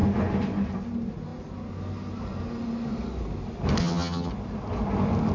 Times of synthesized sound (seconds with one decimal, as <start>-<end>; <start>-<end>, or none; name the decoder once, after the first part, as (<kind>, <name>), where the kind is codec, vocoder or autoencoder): 3.8-4.3 (vocoder, HiFi-GAN)